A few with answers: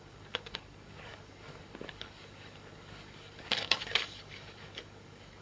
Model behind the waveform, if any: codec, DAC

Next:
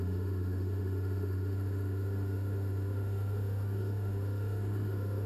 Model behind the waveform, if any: autoencoder, DAC-VAE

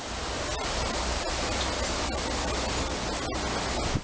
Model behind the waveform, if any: none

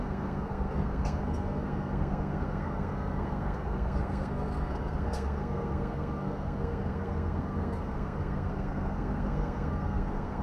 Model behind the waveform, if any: codec, SNAC